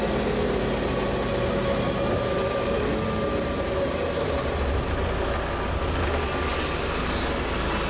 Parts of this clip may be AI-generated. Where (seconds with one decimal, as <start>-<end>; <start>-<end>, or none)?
none